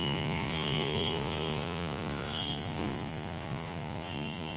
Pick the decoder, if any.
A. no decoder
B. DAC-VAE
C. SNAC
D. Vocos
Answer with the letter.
D